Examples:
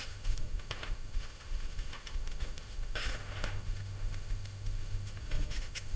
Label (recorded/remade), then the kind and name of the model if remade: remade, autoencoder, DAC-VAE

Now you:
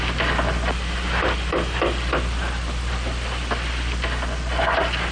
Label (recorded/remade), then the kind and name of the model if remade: remade, vocoder, BigVGAN v2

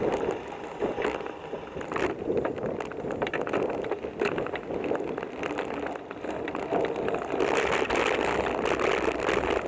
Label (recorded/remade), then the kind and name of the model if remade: recorded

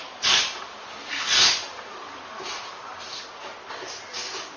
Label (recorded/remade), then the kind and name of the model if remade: recorded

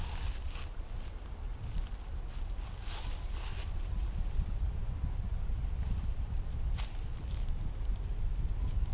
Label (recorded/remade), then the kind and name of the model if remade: recorded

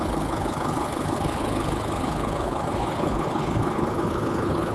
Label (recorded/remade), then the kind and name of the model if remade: remade, codec, HILCodec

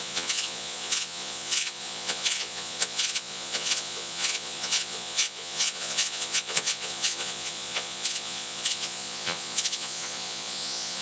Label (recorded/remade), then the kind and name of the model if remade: remade, vocoder, Vocos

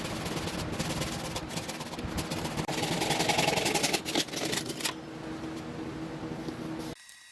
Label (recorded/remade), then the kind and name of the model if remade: recorded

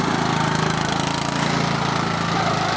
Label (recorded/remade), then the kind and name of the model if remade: recorded